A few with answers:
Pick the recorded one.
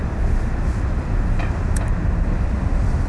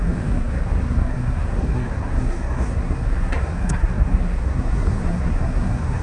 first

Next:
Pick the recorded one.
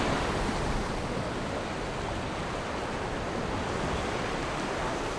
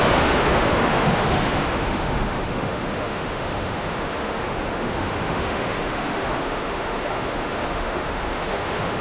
first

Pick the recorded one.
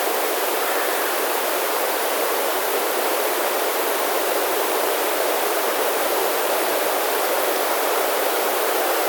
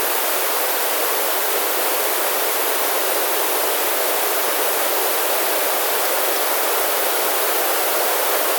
second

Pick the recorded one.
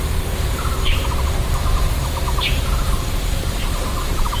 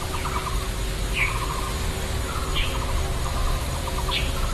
second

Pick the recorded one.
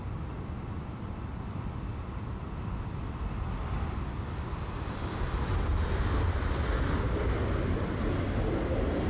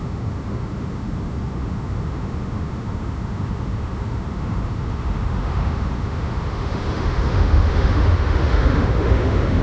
first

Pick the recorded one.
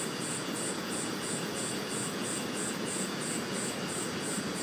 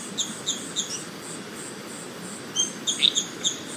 second